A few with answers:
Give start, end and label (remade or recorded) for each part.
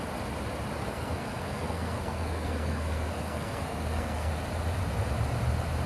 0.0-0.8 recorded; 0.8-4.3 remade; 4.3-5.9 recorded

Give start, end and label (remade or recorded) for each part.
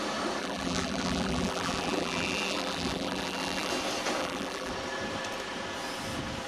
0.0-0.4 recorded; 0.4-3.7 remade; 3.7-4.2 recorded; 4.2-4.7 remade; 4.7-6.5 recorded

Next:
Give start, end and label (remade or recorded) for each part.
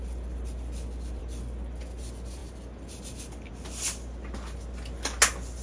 0.0-5.6 recorded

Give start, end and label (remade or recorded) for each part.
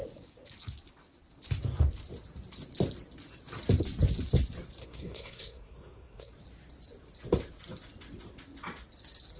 0.0-4.8 recorded; 4.8-6.3 remade; 6.3-9.4 recorded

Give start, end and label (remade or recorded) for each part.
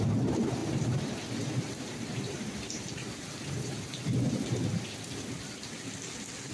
0.0-0.6 recorded; 0.6-4.3 remade; 4.3-6.5 recorded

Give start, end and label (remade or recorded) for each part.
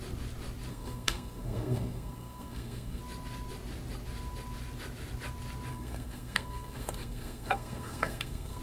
0.0-0.7 recorded; 0.7-3.0 remade; 3.0-5.7 recorded; 5.7-8.6 remade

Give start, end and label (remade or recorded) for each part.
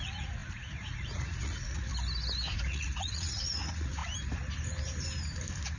0.0-1.9 remade; 1.9-2.5 recorded; 2.5-4.0 remade; 4.0-5.8 recorded